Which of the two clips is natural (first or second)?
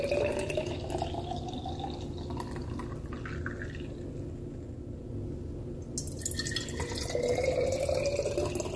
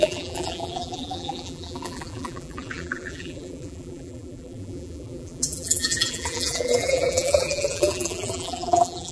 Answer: first